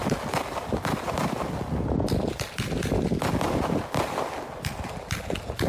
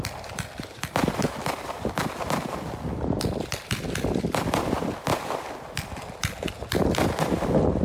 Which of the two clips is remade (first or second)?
second